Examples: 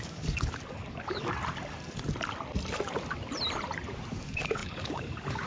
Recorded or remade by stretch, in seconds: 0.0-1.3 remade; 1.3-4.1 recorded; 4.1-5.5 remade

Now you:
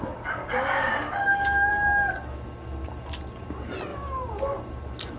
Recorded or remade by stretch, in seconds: 0.0-0.4 recorded; 0.4-1.7 remade; 1.7-5.2 recorded

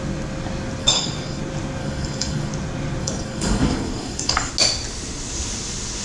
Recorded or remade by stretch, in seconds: 0.0-0.8 recorded; 0.8-1.4 remade; 1.4-1.8 recorded; 1.8-2.5 remade; 2.5-3.0 recorded; 3.0-4.5 remade; 4.5-6.0 recorded